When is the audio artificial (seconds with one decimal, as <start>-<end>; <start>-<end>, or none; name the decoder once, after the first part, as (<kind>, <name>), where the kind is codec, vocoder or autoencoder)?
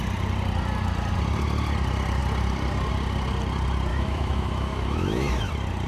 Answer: 3.9-5.5 (autoencoder, DAC-VAE)